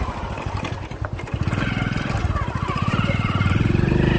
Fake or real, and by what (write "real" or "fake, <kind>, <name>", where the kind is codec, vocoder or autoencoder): fake, vocoder, BigVGAN v2